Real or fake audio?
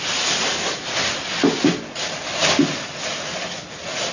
real